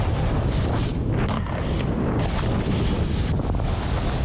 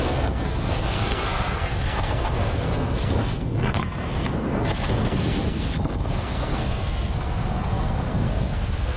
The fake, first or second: second